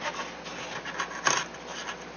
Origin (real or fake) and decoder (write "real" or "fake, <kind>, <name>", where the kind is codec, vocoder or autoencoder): real